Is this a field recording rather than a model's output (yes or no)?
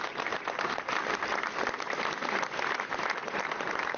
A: yes